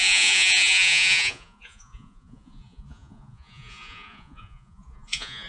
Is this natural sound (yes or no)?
no